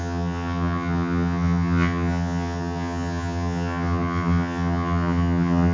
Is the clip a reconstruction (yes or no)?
yes